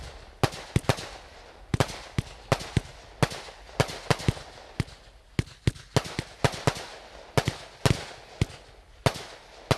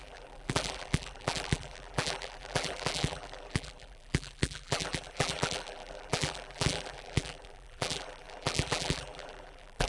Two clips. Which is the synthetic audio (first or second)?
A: second